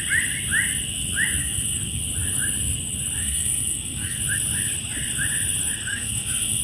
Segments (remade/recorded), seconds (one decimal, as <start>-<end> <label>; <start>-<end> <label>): 0.0-1.4 recorded; 1.4-2.0 remade; 2.0-3.2 recorded; 3.2-4.2 remade; 4.2-5.9 recorded; 5.9-6.6 remade